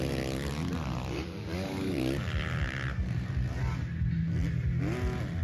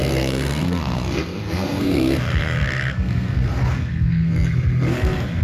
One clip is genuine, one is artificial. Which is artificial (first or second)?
second